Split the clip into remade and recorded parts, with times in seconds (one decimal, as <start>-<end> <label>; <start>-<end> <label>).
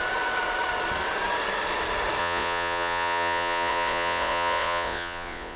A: 0.0-2.2 recorded; 2.2-5.6 remade